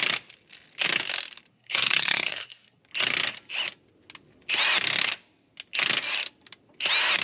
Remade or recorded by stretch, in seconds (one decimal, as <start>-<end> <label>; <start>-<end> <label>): 0.0-1.5 recorded; 1.5-2.8 remade; 2.8-7.2 recorded